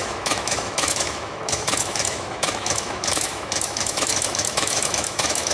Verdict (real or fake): fake